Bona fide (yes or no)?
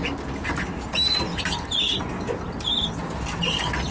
yes